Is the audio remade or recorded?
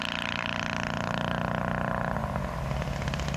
recorded